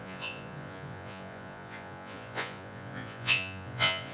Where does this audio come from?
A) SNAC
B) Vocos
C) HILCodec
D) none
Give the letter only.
B